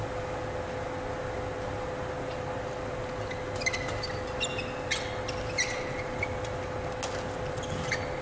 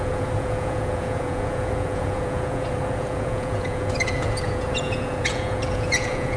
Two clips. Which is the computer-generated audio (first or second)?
second